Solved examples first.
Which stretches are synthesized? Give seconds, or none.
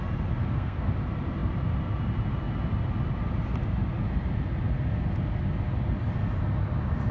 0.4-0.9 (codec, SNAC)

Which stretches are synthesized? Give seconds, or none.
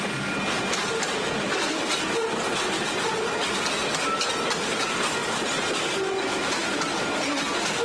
none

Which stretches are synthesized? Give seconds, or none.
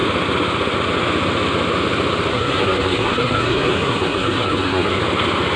2.3-5.0 (codec, SNAC)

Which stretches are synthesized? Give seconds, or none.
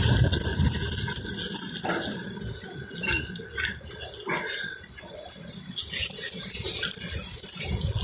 none